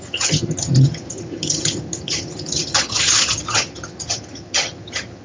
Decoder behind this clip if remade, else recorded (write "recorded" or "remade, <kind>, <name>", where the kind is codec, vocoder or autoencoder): remade, vocoder, HiFi-GAN